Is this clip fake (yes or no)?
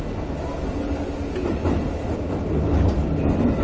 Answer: no